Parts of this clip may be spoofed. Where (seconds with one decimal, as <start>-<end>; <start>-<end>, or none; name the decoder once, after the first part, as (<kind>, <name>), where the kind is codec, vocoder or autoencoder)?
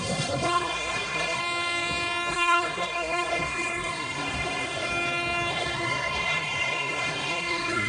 0.0-1.4 (codec, SNAC); 2.3-4.9; 5.5-7.9